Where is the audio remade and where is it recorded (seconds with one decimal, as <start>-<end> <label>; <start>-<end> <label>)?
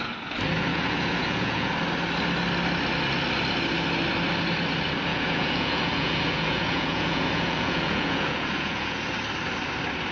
0.0-0.7 recorded; 0.7-1.7 remade; 1.7-5.1 recorded; 5.1-9.0 remade; 9.0-10.1 recorded